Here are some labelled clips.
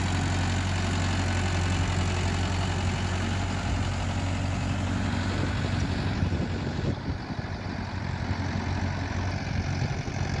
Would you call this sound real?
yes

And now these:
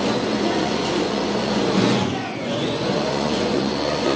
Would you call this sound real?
no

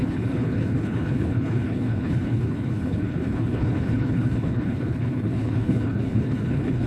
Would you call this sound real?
no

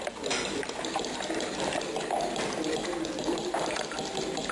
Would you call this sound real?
yes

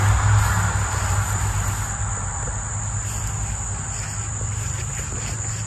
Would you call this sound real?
yes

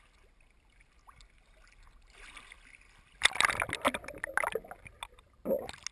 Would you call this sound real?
yes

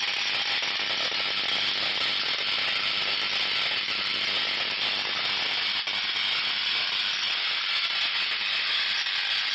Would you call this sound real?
yes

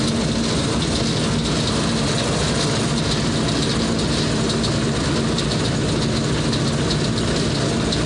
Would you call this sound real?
yes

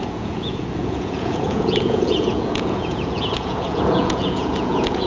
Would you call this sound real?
no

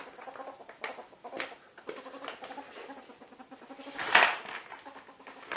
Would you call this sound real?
no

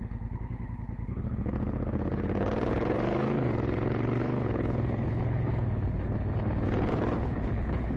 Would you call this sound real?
no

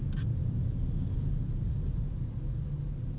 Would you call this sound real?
yes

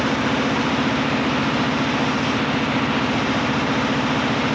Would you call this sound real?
yes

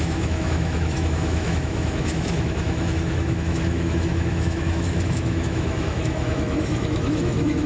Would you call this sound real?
no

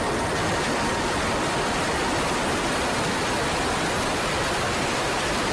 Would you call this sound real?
yes